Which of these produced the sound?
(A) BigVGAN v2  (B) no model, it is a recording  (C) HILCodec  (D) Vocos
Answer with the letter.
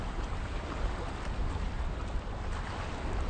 A